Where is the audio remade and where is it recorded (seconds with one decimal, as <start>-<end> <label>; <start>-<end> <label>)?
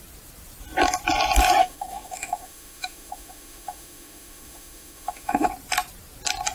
0.0-1.6 recorded; 1.6-5.5 remade; 5.5-6.5 recorded